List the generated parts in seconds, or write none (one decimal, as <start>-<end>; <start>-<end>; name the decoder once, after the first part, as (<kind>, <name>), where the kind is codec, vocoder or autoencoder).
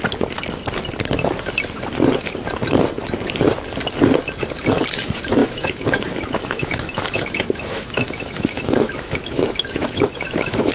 5.4-10.7 (autoencoder, DAC-VAE)